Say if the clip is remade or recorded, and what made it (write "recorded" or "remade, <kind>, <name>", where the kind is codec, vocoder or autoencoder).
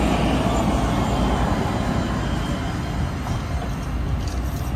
recorded